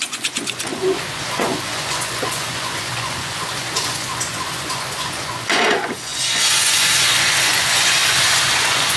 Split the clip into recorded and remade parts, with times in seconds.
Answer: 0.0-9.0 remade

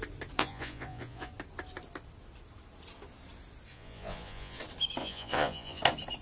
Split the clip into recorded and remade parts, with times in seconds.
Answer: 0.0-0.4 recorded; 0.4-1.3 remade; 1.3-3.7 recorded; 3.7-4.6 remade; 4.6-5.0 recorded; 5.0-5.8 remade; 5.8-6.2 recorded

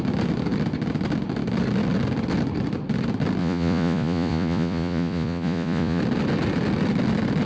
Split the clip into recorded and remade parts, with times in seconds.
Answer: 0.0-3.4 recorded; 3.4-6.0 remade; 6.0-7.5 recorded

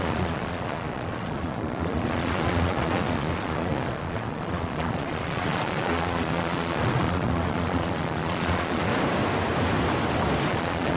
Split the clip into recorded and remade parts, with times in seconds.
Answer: 0.0-8.9 remade; 8.9-10.5 recorded; 10.5-11.0 remade

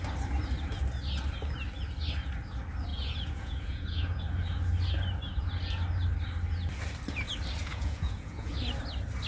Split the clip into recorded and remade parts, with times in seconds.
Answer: 0.0-2.9 recorded; 2.9-4.2 remade; 4.2-7.6 recorded; 7.6-8.5 remade; 8.5-9.3 recorded

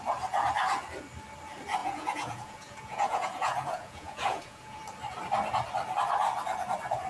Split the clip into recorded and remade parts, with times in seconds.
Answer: 0.0-1.8 recorded; 1.8-4.8 remade; 4.8-7.1 recorded

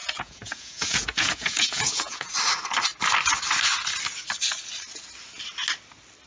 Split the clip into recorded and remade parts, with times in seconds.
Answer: 0.0-2.3 remade; 2.3-6.3 recorded

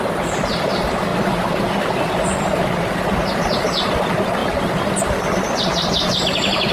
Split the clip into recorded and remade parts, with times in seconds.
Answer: 0.0-6.7 recorded